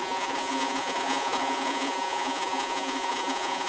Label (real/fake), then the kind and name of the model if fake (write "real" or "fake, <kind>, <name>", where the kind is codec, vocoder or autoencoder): fake, vocoder, Vocos